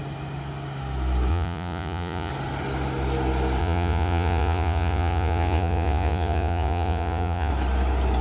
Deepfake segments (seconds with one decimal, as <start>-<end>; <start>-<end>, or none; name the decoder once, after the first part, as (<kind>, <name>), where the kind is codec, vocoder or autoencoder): 1.3-2.3 (vocoder, Vocos); 3.6-7.5